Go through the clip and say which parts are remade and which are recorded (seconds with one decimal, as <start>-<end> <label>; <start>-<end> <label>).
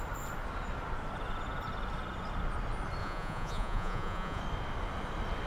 0.0-3.0 recorded; 3.0-4.4 remade; 4.4-5.5 recorded